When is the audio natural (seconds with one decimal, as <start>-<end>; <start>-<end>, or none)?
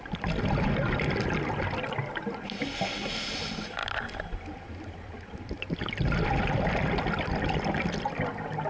0.0-8.7